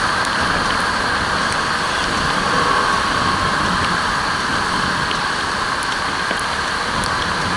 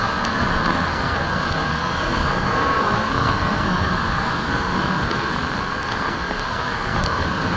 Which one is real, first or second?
first